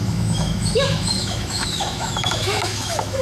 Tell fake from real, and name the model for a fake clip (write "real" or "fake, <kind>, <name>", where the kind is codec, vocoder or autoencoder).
fake, autoencoder, DAC-VAE